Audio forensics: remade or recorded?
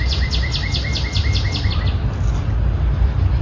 recorded